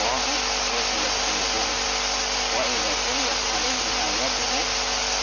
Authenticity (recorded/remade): recorded